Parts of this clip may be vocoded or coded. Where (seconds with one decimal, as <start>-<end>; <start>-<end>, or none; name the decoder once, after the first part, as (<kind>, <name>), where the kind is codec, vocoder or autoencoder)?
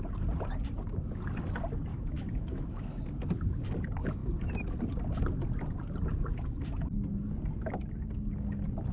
1.9-3.0 (autoencoder, DAC-VAE)